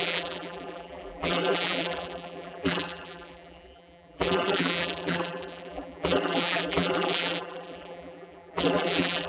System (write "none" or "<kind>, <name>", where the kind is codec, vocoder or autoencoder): vocoder, BigVGAN v2